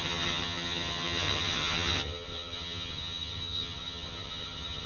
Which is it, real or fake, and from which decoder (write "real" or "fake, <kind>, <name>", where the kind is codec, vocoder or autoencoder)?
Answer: fake, vocoder, HiFi-GAN